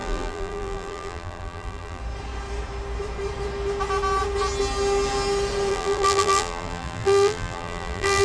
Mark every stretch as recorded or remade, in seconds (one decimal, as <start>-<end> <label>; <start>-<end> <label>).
0.0-2.0 remade; 2.0-5.7 recorded; 5.7-8.2 remade

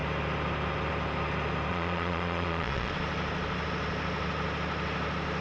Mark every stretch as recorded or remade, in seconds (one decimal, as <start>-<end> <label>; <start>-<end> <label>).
0.0-1.7 recorded; 1.7-2.9 remade; 2.9-5.4 recorded

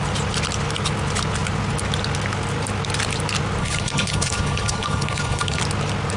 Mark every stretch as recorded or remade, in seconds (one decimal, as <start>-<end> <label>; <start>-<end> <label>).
0.0-3.6 recorded; 3.6-5.6 remade; 5.6-6.2 recorded

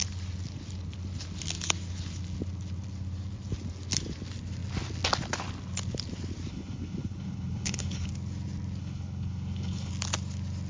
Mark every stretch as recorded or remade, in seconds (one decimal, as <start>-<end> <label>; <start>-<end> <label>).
0.0-6.5 recorded; 6.5-8.1 remade; 8.1-8.8 recorded; 8.8-9.9 remade; 9.9-10.7 recorded